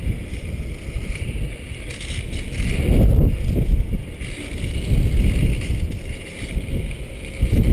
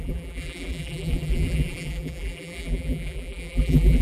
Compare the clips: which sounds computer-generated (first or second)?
second